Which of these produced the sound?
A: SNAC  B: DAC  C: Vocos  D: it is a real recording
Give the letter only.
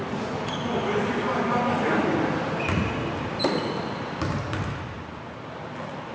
D